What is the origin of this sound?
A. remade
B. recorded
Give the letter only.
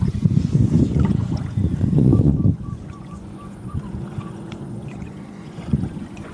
A